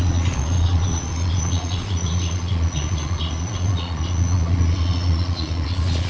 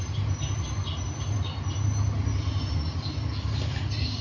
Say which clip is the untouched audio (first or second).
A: second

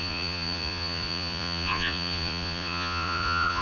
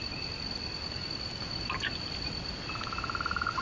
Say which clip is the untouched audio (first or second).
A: second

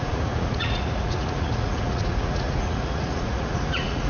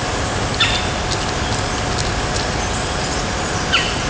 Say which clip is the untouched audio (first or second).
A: second